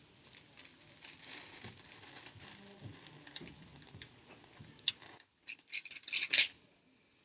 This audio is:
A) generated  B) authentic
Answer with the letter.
B